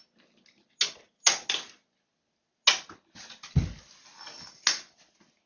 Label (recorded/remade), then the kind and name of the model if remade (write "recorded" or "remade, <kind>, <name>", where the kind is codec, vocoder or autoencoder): recorded